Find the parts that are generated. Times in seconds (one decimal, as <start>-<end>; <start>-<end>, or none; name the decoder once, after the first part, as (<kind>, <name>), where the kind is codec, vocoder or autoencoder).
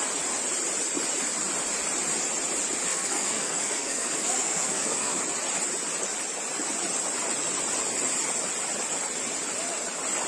2.9-5.2 (codec, SNAC)